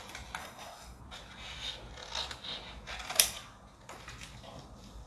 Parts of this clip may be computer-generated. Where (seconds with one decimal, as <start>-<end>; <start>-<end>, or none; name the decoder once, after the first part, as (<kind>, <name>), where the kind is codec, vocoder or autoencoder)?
0.4-1.0 (codec, SNAC)